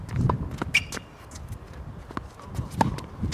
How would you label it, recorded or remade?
recorded